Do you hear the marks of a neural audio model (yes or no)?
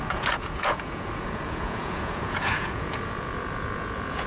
yes